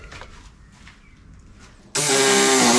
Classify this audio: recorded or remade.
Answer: recorded